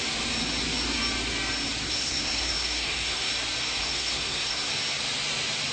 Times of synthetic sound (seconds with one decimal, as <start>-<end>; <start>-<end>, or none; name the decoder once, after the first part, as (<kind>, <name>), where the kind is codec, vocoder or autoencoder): 1.8-3.3 (codec, SNAC); 3.8-4.7